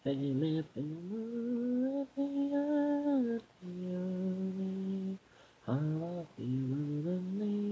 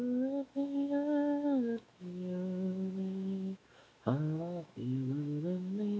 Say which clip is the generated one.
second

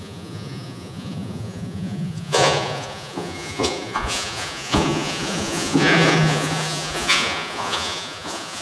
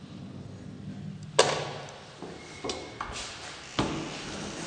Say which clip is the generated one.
first